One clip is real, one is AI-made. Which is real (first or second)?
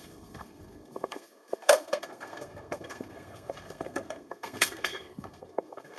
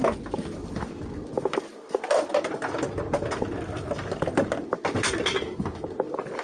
second